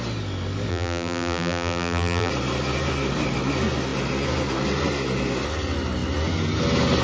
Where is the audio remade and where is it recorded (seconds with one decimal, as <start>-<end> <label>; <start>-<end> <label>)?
0.0-0.7 recorded; 0.7-2.3 remade; 2.3-7.0 recorded